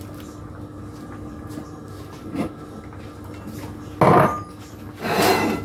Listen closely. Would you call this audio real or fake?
real